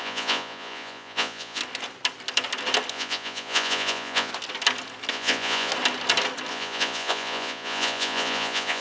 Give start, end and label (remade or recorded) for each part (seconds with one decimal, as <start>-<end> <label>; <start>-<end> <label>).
0.0-1.6 remade; 1.6-2.9 recorded; 2.9-4.3 remade; 4.3-5.1 recorded; 5.1-5.7 remade; 5.7-6.5 recorded; 6.5-8.8 remade

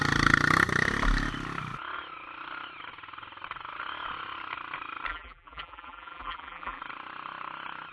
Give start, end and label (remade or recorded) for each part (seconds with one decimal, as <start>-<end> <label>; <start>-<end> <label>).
0.0-5.1 recorded; 5.1-6.8 remade; 6.8-7.9 recorded

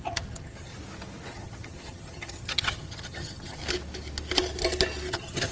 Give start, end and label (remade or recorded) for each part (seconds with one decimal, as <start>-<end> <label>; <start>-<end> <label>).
0.0-0.7 remade; 0.7-1.3 recorded; 1.3-3.6 remade; 3.6-5.1 recorded; 5.1-5.5 remade

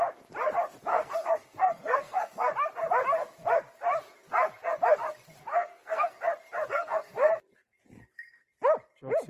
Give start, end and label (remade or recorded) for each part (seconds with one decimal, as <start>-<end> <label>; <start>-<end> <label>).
0.0-0.9 recorded; 0.9-2.5 remade; 2.5-5.5 recorded; 5.5-6.2 remade; 6.2-6.7 recorded; 6.7-7.3 remade; 7.3-9.3 recorded